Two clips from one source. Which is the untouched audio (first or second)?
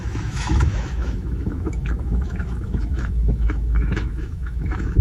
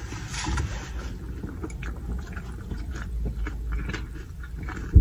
second